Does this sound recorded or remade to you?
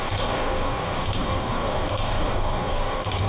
remade